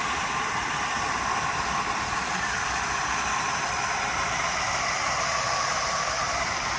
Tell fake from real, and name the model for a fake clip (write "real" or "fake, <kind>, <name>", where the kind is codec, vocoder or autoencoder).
real